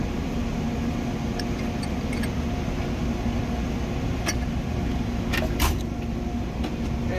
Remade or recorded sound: recorded